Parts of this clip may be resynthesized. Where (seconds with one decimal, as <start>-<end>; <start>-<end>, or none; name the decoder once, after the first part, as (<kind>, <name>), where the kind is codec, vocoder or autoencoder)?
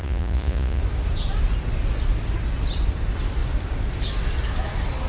0.0-0.8 (vocoder, Vocos)